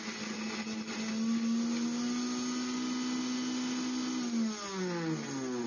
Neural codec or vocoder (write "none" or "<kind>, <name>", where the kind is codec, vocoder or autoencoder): none